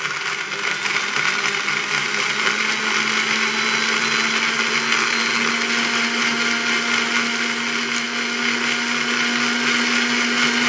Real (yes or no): yes